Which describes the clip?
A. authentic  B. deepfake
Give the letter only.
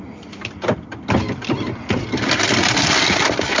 A